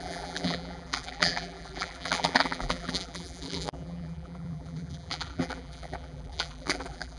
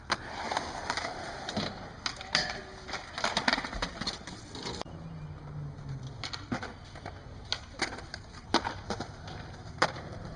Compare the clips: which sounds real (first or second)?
second